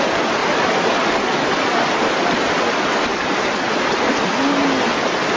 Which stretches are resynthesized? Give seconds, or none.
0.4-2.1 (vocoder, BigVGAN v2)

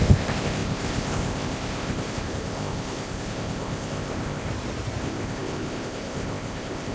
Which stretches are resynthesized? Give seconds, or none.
0.0-4.5 (codec, ZipCodec); 5.0-6.9

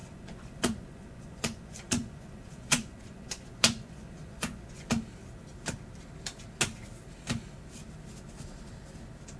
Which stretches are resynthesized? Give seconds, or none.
0.0-4.9 (vocoder, Vocos)

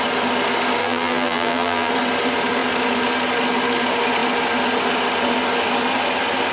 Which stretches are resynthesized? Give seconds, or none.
0.8-1.9 (vocoder, BigVGAN v2)